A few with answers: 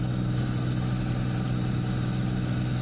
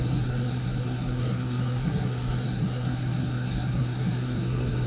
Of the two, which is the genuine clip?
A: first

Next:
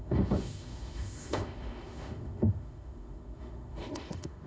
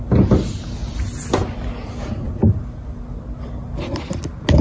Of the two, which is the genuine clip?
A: second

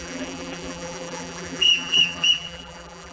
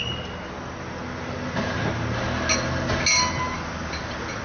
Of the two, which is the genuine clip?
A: second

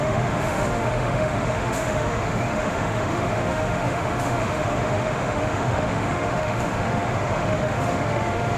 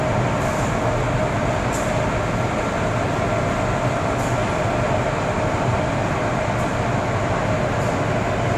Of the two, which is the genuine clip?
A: second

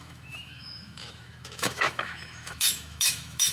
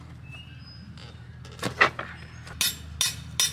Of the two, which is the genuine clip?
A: second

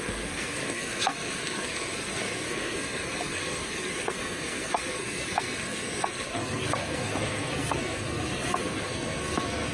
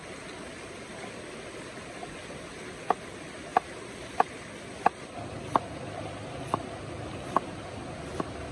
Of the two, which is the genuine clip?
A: second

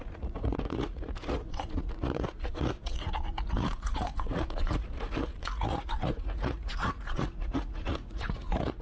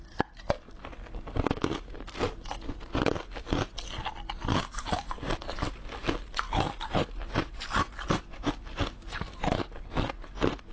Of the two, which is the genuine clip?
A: second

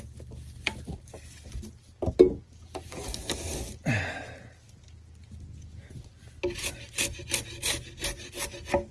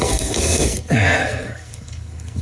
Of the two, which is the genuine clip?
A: first